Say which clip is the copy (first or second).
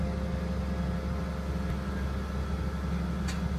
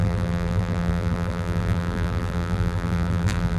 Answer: second